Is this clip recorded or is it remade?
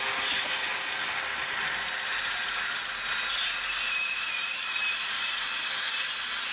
recorded